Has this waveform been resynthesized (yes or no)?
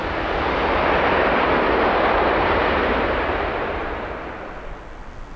no